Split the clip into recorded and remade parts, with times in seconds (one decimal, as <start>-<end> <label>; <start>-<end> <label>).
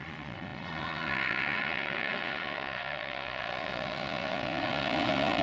0.0-5.4 remade